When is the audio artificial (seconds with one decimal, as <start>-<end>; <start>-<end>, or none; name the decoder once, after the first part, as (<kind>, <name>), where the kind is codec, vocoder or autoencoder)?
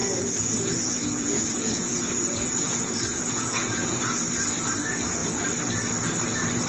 0.0-4.0 (vocoder, Vocos)